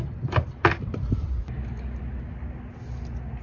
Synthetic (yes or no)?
no